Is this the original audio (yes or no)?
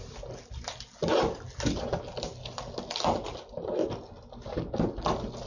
yes